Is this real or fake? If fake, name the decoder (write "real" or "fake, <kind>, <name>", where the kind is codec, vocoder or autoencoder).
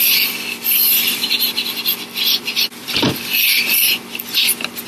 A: real